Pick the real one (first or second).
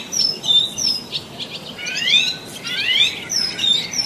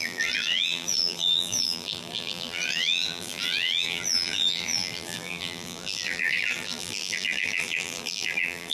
first